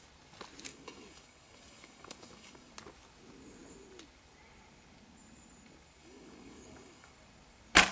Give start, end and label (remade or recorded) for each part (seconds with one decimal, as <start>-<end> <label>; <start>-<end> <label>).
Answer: 0.0-0.7 recorded; 0.7-2.7 remade; 2.7-6.0 recorded; 6.0-7.1 remade; 7.1-7.9 recorded